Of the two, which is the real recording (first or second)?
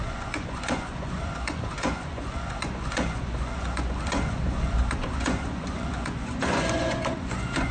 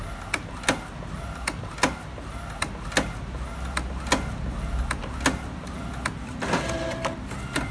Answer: second